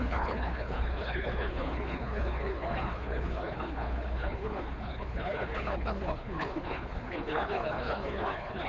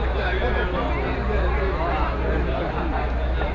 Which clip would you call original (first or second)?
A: second